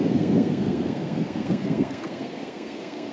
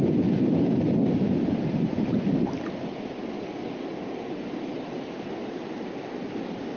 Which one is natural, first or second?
second